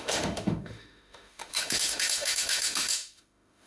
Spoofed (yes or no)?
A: yes